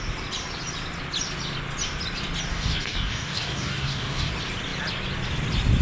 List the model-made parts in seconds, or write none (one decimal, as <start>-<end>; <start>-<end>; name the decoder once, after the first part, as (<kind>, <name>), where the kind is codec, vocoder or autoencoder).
2.5-4.3 (codec, DAC)